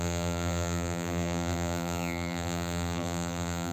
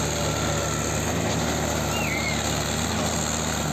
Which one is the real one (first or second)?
second